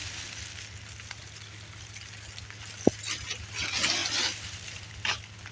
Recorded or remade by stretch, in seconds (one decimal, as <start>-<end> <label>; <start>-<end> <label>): 0.0-5.5 recorded